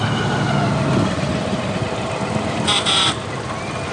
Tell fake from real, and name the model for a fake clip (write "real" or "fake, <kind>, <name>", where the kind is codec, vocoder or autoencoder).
real